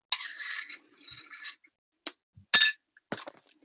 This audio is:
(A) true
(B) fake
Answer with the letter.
A